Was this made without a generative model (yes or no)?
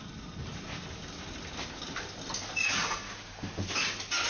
yes